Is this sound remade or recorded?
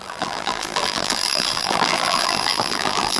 remade